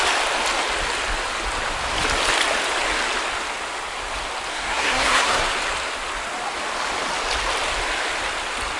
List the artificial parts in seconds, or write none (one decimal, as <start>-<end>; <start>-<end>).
4.5-5.5